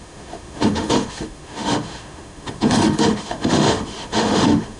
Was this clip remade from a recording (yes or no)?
yes